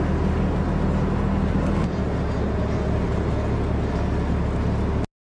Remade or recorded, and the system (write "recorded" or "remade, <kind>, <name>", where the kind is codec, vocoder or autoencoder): recorded